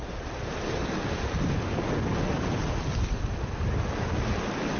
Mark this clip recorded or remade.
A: recorded